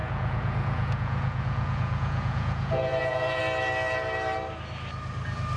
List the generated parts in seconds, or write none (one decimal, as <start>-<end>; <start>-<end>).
0.0-3.4